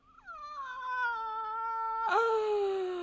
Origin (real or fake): real